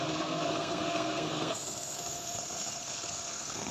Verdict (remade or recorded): remade